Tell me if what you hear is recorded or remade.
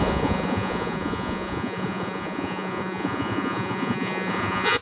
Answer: remade